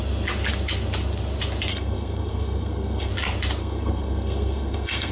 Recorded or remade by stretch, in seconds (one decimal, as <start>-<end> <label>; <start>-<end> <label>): 0.0-1.7 recorded; 1.7-3.1 remade; 3.1-3.6 recorded; 3.6-5.1 remade